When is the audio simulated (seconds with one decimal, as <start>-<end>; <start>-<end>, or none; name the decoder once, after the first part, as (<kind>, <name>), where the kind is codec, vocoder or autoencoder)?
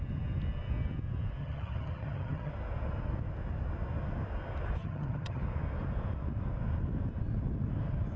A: 1.4-2.5 (vocoder, HiFi-GAN); 4.8-5.4